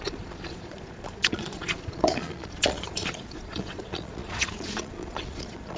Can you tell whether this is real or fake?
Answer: fake